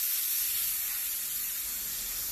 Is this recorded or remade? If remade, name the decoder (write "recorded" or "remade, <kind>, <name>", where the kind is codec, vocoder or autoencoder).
recorded